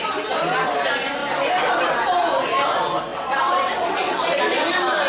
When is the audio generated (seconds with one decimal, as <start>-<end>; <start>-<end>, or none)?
3.1-4.4